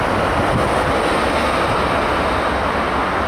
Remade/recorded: recorded